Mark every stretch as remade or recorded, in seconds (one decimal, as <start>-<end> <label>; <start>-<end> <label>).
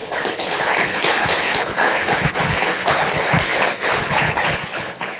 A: 0.0-5.2 remade